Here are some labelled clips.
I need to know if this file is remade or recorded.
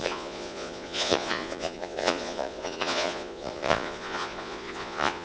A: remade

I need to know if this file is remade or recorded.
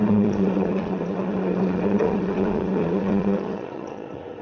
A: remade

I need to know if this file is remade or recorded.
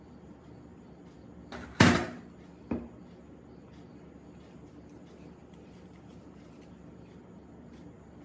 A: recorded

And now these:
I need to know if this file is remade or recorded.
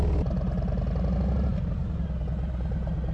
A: recorded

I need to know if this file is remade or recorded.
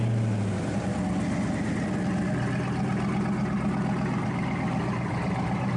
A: recorded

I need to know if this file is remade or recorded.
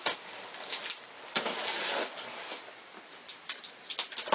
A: recorded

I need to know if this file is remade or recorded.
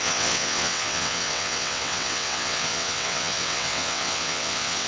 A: remade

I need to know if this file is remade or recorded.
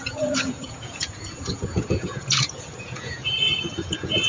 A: remade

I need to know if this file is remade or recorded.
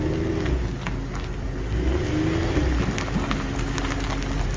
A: recorded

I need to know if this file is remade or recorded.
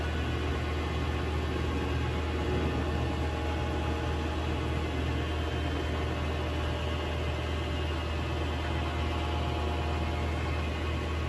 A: recorded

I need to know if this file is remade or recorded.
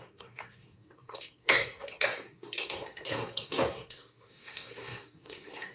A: remade